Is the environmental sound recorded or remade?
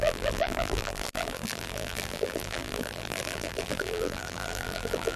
remade